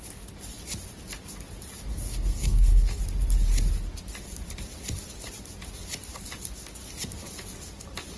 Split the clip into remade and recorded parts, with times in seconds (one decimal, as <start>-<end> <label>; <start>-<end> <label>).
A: 0.0-1.9 recorded; 1.9-3.0 remade; 3.0-8.2 recorded